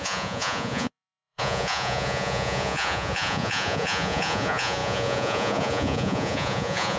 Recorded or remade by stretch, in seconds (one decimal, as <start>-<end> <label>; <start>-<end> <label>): 0.0-7.0 remade